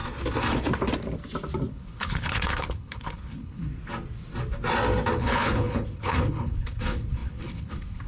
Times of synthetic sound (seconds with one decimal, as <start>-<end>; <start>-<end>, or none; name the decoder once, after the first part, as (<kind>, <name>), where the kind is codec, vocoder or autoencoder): 1.7-3.7 (codec, HILCodec); 5.2-8.1